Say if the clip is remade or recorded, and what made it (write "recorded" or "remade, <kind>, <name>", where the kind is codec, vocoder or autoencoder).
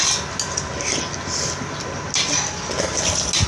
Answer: recorded